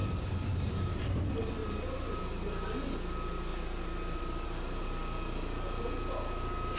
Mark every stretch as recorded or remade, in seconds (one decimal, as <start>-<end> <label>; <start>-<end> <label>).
0.0-1.0 remade; 1.0-1.6 recorded; 1.6-2.2 remade; 2.2-3.5 recorded; 3.5-4.9 remade; 4.9-6.8 recorded